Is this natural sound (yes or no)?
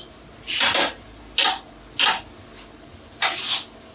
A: yes